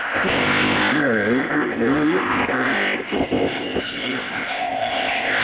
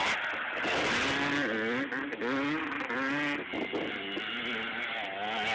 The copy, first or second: first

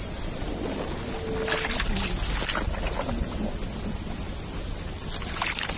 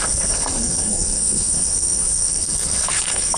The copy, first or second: second